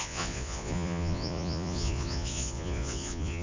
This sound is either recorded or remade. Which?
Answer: remade